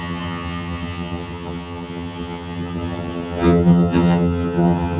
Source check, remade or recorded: remade